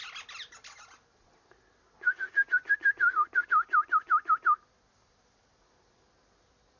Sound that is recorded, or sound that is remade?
recorded